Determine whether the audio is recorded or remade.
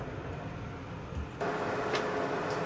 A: recorded